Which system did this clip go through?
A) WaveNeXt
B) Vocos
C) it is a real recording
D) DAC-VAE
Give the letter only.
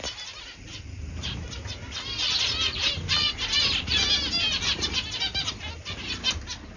C